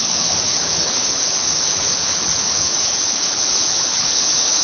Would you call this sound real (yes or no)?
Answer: no